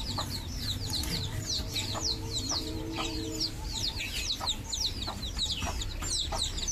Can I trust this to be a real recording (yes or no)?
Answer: no